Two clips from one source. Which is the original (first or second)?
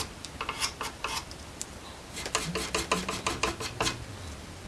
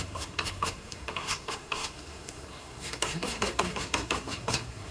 first